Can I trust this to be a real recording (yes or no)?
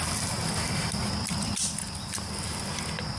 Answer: yes